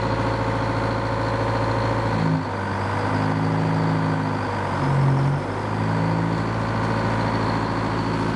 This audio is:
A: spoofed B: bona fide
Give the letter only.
B